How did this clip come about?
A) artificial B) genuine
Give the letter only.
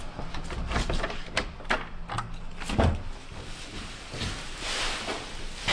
B